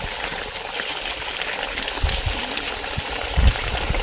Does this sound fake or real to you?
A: fake